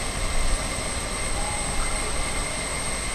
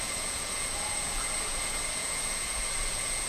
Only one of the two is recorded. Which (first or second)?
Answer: first